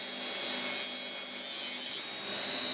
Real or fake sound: real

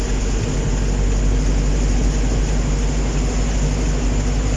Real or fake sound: real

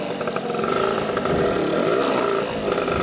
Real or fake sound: real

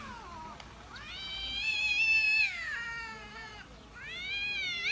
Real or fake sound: real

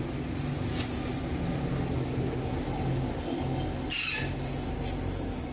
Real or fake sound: real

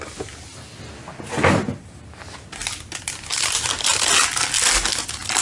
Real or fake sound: real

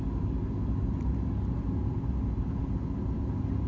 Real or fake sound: real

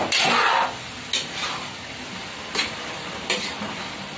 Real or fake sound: real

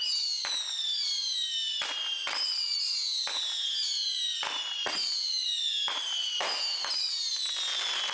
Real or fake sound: real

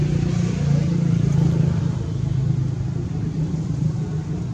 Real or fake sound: real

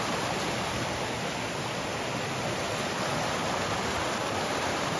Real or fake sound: real